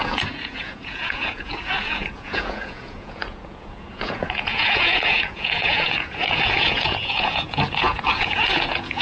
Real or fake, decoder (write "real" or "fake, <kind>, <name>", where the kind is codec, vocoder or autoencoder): fake, vocoder, Vocos